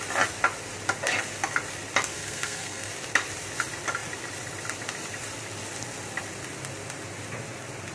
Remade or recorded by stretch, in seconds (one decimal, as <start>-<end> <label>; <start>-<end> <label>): 0.0-2.1 recorded; 2.1-2.9 remade; 2.9-7.9 recorded